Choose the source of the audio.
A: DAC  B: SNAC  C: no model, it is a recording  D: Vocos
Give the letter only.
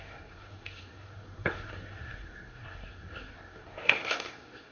B